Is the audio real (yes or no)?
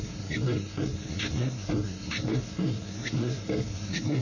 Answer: no